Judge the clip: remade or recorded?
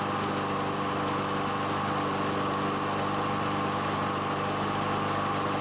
recorded